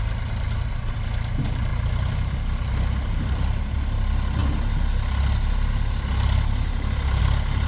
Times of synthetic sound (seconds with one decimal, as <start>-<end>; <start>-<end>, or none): none